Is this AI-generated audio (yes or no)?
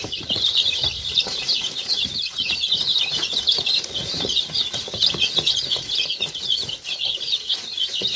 yes